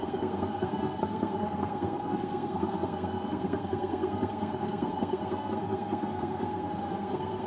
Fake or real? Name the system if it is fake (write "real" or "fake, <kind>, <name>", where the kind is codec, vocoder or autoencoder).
fake, codec, SNAC